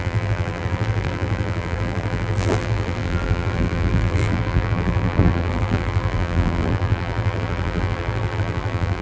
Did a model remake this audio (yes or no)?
yes